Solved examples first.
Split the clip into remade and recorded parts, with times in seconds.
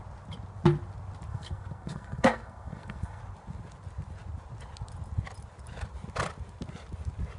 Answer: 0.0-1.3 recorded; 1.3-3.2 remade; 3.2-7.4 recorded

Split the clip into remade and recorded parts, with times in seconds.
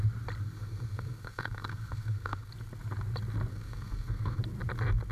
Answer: 0.0-0.4 recorded; 0.4-2.5 remade; 2.5-3.5 recorded; 3.5-4.4 remade; 4.4-5.1 recorded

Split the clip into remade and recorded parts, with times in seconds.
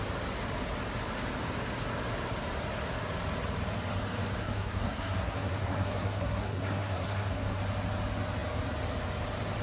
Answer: 0.0-4.4 recorded; 4.4-7.6 remade; 7.6-9.6 recorded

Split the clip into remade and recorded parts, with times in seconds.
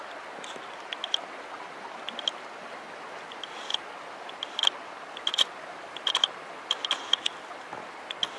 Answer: 0.0-8.4 recorded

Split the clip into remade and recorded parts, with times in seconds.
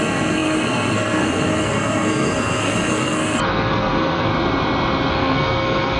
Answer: 0.0-4.3 remade; 4.3-5.1 recorded; 5.1-6.0 remade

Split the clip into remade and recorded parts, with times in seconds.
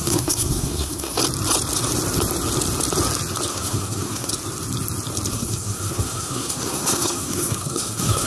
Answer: 0.0-1.2 remade; 1.2-3.5 recorded; 3.5-4.3 remade; 4.3-5.3 recorded; 5.3-8.3 remade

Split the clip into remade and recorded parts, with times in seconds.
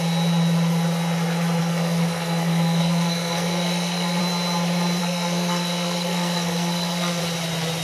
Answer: 0.0-1.6 recorded; 1.6-4.2 remade; 4.2-5.0 recorded; 5.0-7.2 remade; 7.2-7.8 recorded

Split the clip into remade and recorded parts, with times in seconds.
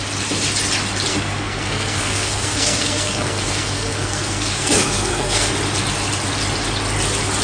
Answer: 0.0-1.1 recorded; 1.1-5.5 remade; 5.5-7.4 recorded